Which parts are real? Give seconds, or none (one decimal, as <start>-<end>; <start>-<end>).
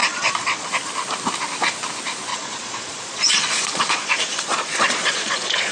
0.7-2.3